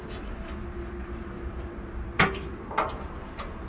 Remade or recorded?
recorded